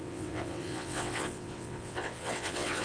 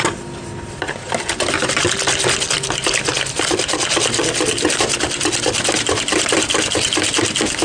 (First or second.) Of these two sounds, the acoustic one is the second